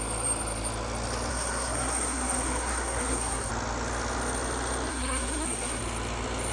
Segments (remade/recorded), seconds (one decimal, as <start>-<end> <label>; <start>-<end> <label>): 0.0-1.3 recorded; 1.3-3.5 remade; 3.5-4.9 recorded; 4.9-5.8 remade; 5.8-6.5 recorded